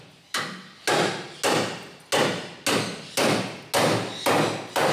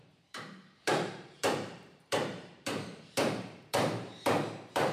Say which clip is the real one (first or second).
first